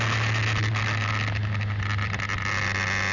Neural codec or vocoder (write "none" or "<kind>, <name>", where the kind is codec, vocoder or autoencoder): none